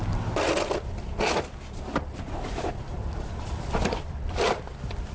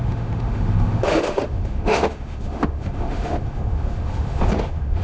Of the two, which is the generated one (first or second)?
second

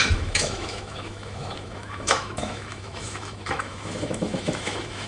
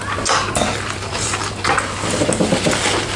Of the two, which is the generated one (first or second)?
first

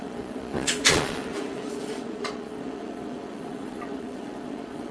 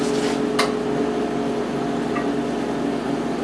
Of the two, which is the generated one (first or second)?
first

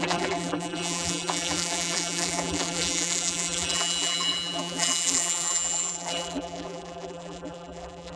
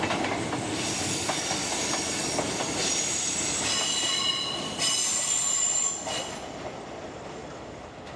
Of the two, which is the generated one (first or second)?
first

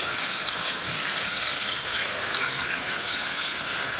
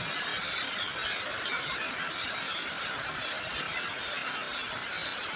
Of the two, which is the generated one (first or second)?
first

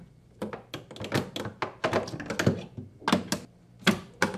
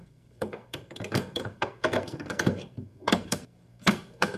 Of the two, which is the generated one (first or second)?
second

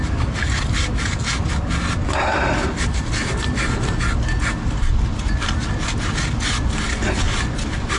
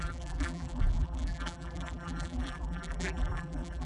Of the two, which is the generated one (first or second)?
second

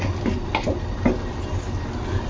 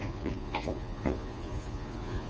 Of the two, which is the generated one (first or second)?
second